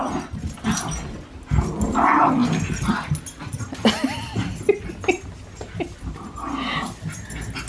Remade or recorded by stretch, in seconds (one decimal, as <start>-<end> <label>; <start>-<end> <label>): 0.0-7.7 recorded